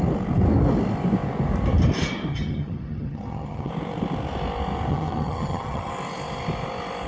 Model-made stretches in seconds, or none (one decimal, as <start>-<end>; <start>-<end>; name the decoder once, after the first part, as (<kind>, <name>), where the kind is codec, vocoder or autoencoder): 2.3-3.7 (vocoder, HiFi-GAN); 4.9-5.9